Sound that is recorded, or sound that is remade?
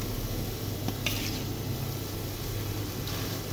recorded